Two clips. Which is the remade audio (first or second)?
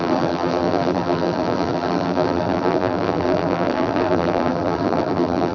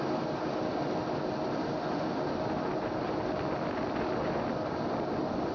first